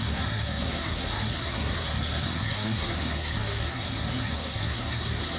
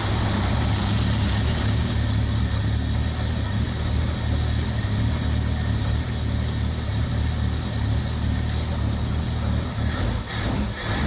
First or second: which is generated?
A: first